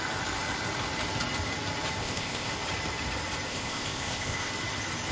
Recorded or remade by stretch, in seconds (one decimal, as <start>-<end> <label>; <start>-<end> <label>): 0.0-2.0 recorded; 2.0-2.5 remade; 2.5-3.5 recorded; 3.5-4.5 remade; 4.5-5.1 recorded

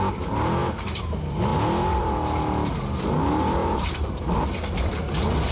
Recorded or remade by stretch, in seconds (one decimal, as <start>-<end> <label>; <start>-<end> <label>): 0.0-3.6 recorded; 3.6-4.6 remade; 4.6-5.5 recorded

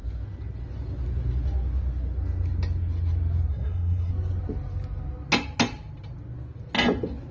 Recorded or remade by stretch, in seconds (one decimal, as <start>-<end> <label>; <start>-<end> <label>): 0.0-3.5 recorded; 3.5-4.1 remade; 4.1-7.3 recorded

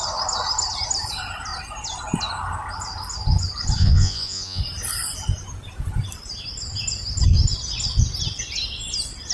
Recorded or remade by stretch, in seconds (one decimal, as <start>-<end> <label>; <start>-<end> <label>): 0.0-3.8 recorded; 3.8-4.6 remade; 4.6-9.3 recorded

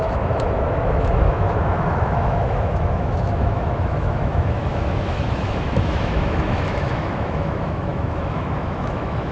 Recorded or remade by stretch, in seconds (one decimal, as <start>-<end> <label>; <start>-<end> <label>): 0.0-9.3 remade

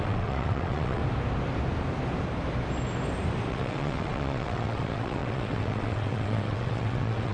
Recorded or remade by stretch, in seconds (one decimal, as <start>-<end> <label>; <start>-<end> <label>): 0.0-1.0 remade; 1.0-3.5 recorded; 3.5-7.3 remade

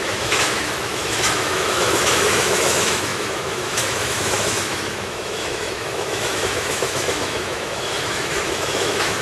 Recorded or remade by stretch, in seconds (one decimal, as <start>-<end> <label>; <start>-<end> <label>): 0.0-9.2 remade

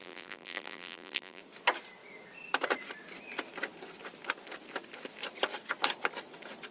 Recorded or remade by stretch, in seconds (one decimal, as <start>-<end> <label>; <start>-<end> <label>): 0.0-1.4 remade; 1.4-6.7 recorded